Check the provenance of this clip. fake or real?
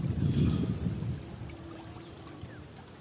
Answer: real